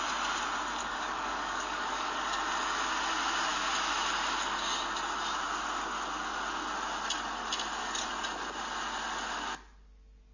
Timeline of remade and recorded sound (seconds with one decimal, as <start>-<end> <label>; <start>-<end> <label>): 0.0-0.8 recorded; 0.8-2.4 remade; 2.4-10.3 recorded